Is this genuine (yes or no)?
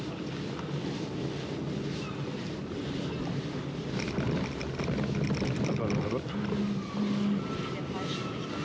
yes